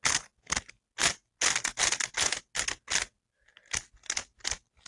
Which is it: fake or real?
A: real